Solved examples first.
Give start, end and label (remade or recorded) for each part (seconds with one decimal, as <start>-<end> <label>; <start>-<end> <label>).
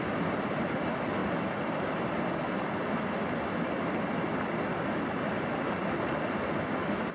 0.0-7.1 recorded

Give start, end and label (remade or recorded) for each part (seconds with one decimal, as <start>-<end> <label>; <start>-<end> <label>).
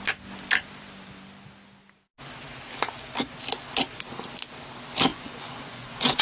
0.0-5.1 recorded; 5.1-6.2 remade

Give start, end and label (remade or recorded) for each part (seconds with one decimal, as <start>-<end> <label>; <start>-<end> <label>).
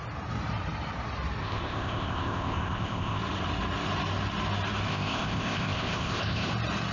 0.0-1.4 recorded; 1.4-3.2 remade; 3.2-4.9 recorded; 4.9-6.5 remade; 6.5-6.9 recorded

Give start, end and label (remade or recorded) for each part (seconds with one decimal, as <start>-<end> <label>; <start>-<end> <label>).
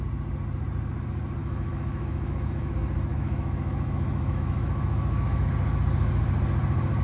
0.0-1.4 recorded; 1.4-2.7 remade; 2.7-3.1 recorded; 3.1-5.5 remade; 5.5-7.0 recorded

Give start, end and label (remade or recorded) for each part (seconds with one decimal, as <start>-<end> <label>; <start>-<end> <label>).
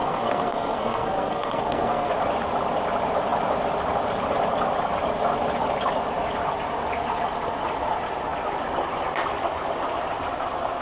0.0-2.1 remade; 2.1-10.8 recorded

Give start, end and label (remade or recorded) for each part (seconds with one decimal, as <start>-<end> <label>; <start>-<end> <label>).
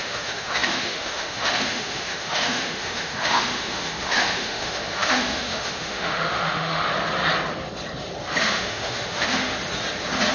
0.0-6.9 remade; 6.9-8.4 recorded; 8.4-9.5 remade; 9.5-10.3 recorded